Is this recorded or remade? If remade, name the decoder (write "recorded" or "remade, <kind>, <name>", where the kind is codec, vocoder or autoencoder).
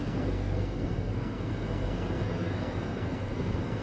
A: remade, codec, SNAC